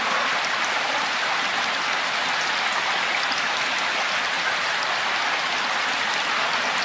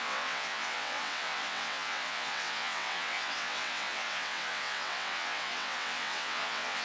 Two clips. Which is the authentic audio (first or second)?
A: first